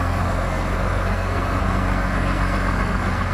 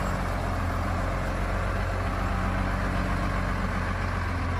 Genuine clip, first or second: second